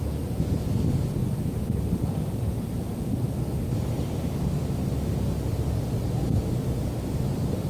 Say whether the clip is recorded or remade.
recorded